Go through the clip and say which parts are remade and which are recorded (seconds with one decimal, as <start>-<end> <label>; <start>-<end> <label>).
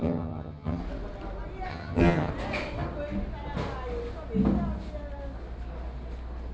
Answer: 0.0-0.8 remade; 0.8-1.7 recorded; 1.7-2.3 remade; 2.3-6.5 recorded